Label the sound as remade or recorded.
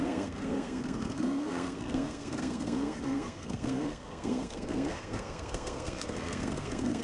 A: remade